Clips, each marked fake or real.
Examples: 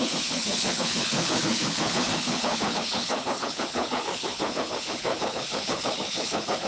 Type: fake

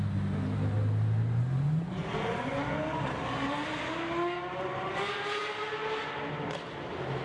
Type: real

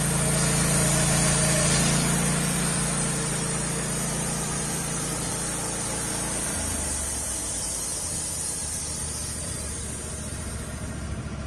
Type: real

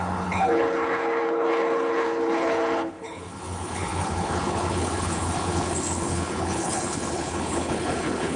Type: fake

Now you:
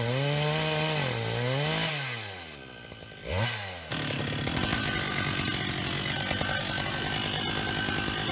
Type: real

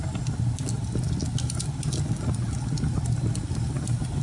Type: real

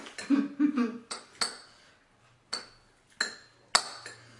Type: real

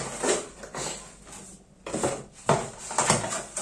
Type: real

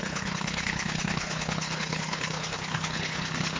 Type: fake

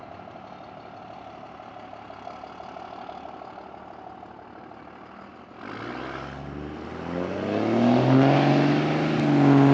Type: real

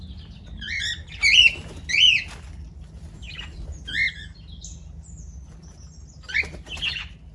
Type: real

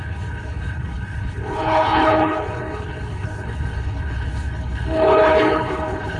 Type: fake